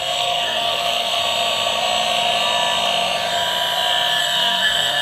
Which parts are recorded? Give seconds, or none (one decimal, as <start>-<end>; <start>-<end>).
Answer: 1.2-4.2